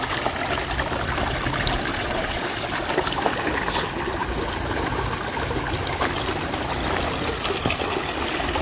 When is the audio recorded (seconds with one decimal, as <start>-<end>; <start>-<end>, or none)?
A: 0.0-1.9; 2.5-8.6